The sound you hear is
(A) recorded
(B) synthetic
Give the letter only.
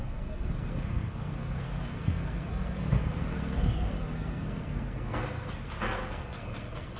B